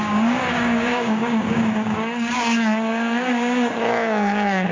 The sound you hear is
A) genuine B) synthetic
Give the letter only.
B